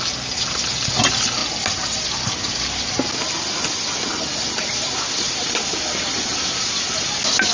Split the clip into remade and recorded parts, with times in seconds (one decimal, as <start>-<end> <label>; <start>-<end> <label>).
0.0-7.5 recorded